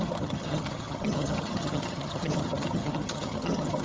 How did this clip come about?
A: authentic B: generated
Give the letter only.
B